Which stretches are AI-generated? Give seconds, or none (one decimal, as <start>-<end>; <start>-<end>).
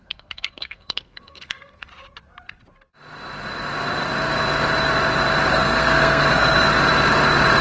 0.0-1.9; 5.5-6.7